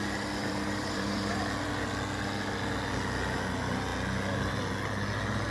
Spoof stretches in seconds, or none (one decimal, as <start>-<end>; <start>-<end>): 0.4-1.4